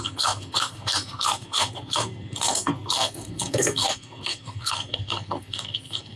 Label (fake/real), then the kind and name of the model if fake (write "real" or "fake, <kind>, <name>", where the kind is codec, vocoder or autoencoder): fake, codec, SNAC